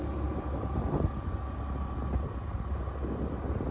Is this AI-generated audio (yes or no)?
no